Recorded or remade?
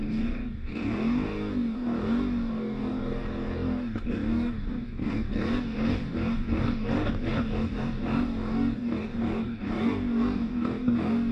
remade